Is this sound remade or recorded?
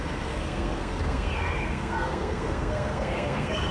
remade